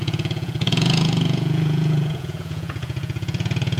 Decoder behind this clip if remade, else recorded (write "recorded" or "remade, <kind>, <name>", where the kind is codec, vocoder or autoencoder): remade, vocoder, Vocos